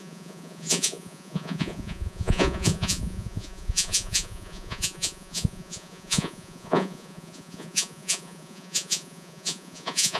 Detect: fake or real fake